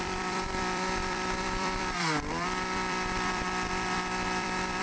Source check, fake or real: fake